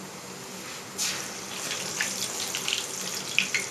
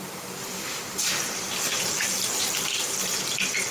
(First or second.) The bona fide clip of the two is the first